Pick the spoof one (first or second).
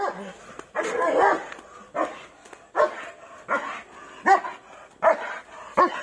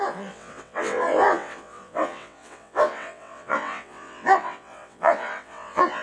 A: second